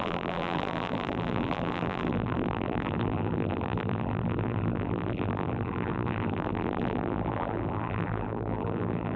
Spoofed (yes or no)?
yes